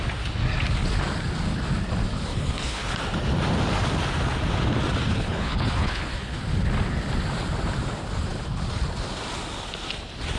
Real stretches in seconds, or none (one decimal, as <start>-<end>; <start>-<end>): 0.0-2.3; 2.9-5.1; 6.4-10.4